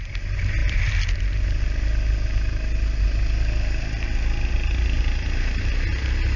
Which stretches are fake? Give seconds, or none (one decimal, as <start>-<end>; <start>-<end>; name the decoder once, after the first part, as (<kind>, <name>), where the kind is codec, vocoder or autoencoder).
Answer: none